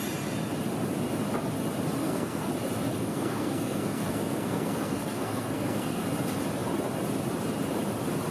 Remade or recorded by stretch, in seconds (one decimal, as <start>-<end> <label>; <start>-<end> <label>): 0.0-2.0 recorded; 2.0-2.5 remade; 2.5-2.9 recorded; 2.9-6.0 remade; 6.0-8.3 recorded